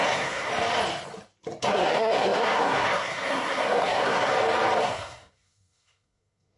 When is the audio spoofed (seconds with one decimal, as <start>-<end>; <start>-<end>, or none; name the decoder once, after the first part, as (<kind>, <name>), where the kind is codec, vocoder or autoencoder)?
0.0-0.5 (codec, SNAC); 1.6-4.3; 4.8-6.6